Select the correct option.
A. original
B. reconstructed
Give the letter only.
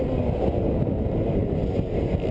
A